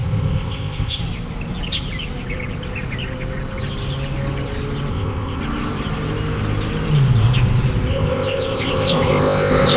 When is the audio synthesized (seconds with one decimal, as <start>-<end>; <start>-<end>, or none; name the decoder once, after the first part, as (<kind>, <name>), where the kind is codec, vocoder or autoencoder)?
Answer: 0.0-1.0 (codec, ZipCodec); 4.9-5.4; 7.9-9.8